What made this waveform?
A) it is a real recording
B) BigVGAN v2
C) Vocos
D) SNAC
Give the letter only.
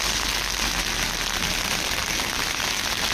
A